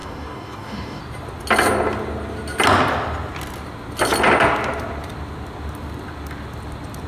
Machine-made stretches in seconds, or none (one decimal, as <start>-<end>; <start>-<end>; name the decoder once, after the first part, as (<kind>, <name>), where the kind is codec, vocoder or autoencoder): 0.0-1.0 (codec, DAC)